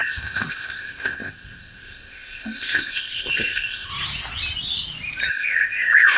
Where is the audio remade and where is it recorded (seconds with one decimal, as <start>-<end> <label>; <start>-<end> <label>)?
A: 0.0-3.9 remade; 3.9-5.3 recorded; 5.3-6.2 remade